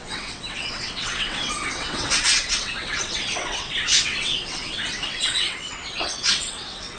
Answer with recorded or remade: remade